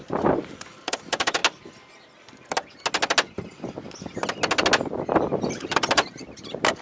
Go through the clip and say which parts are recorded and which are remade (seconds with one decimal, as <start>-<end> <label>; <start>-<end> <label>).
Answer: 0.0-1.4 remade; 1.4-5.5 recorded; 5.5-6.8 remade